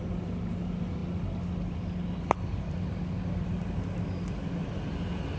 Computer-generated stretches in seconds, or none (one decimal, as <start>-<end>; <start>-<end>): none